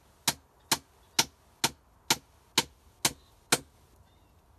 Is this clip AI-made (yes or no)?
no